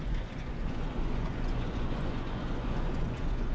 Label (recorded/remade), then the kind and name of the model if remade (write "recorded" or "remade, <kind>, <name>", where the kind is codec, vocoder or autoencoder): remade, vocoder, Vocos